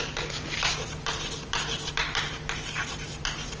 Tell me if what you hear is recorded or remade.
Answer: recorded